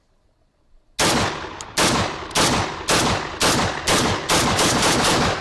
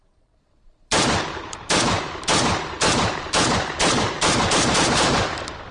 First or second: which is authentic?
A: first